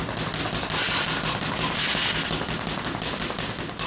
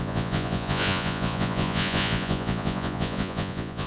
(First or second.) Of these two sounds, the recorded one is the first